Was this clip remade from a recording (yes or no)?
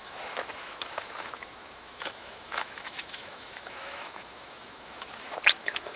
yes